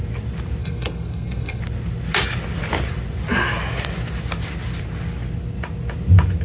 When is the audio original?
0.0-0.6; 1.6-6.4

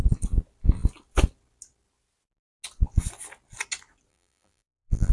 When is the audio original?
0.0-4.1

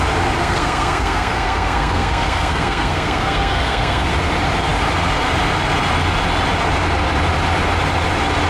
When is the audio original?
0.0-0.4; 4.1-8.5

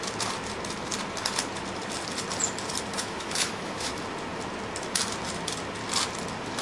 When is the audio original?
0.0-2.9; 3.9-6.6